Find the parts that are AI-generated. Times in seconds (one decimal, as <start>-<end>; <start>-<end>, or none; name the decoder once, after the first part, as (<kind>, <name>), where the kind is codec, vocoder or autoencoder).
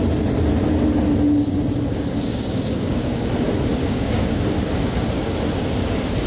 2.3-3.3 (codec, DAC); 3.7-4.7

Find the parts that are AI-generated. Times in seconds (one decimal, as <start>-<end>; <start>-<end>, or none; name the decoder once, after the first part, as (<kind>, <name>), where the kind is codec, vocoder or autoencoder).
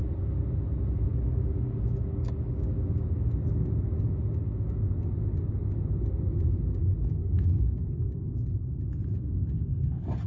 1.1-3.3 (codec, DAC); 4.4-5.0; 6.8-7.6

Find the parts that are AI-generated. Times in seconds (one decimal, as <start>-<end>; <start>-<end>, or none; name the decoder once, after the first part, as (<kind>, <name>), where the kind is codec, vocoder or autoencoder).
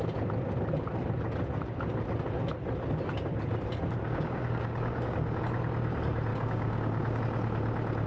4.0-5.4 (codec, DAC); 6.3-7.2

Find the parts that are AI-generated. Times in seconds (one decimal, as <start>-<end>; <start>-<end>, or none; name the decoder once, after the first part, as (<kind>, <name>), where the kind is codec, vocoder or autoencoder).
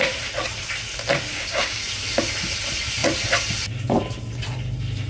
1.3-1.8 (codec, DAC)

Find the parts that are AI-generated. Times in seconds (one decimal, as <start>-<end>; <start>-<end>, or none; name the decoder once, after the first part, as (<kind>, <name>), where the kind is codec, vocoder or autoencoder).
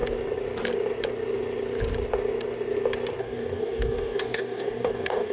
3.2-5.3 (codec, DAC)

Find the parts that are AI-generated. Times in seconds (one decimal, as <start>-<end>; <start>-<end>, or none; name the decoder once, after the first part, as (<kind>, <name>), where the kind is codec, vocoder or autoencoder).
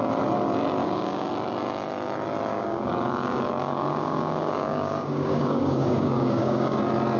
0.8-1.3 (codec, DAC); 2.5-6.8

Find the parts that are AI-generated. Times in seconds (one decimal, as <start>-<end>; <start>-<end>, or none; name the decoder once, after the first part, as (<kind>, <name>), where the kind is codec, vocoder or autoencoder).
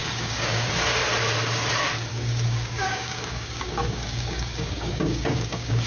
0.0-0.7 (codec, DAC); 2.1-5.9